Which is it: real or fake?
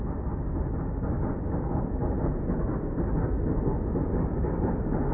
real